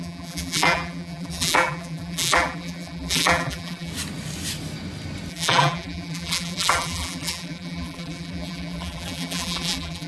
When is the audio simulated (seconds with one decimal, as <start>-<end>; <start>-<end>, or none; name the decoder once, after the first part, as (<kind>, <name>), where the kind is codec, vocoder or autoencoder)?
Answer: 0.0-3.9 (vocoder, BigVGAN v2); 5.3-10.1